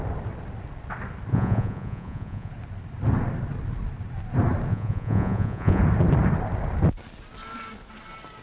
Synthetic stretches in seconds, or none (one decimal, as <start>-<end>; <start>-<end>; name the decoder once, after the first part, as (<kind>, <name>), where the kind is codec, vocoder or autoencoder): 1.3-2.5 (vocoder, Vocos); 4.7-5.8